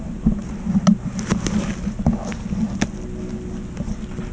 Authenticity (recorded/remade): recorded